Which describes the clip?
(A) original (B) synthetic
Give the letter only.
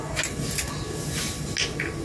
A